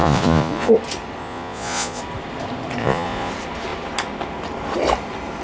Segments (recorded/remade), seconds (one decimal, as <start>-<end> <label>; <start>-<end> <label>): 0.0-0.7 remade; 0.7-1.2 recorded; 1.2-2.0 remade; 2.0-2.8 recorded; 2.8-3.3 remade; 3.3-5.4 recorded